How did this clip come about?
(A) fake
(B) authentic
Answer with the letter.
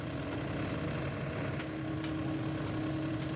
B